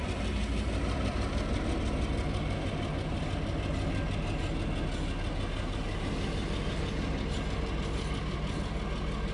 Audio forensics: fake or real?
real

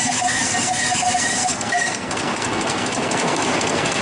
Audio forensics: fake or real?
fake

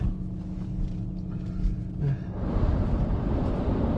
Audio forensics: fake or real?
real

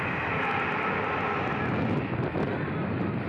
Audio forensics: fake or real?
real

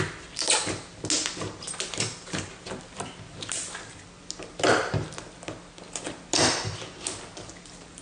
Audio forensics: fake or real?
real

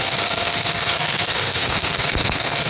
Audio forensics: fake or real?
fake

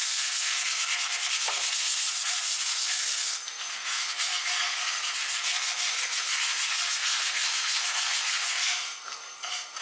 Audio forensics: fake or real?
fake